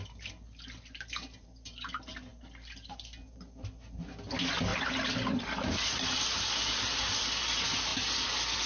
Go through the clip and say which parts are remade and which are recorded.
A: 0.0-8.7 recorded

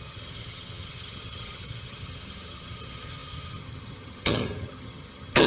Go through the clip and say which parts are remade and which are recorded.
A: 0.0-5.5 remade

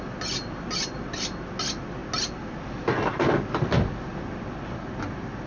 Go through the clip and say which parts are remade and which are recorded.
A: 0.0-5.5 recorded

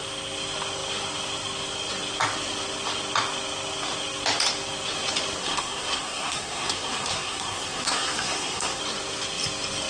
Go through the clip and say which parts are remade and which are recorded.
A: 0.0-5.4 recorded; 5.4-8.8 remade; 8.8-9.9 recorded

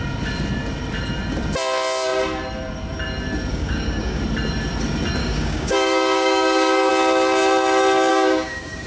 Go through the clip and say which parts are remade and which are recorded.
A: 0.0-3.5 recorded; 3.5-4.2 remade; 4.2-5.2 recorded; 5.2-6.9 remade; 6.9-8.1 recorded; 8.1-8.9 remade

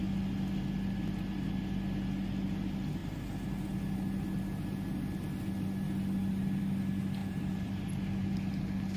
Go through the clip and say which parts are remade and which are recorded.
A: 0.0-7.2 recorded; 7.2-7.9 remade; 7.9-9.0 recorded

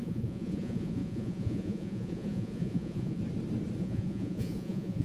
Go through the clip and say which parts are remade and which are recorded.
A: 0.0-3.2 remade; 3.2-3.8 recorded; 3.8-5.0 remade